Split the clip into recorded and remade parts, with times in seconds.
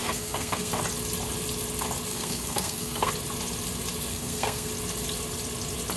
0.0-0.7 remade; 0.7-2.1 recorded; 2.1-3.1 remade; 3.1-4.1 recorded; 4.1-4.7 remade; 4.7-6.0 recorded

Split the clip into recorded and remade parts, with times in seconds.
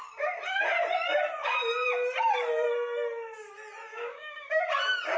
0.0-3.9 recorded; 3.9-4.6 remade; 4.6-5.2 recorded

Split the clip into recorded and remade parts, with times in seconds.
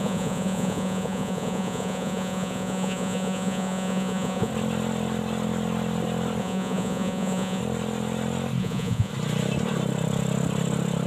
0.0-4.5 remade; 4.5-6.4 recorded; 6.4-7.6 remade; 7.6-8.6 recorded; 8.6-9.1 remade; 9.1-11.1 recorded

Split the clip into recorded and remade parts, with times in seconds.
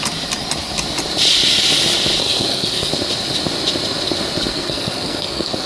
0.0-2.2 recorded; 2.2-2.9 remade; 2.9-4.5 recorded; 4.5-5.7 remade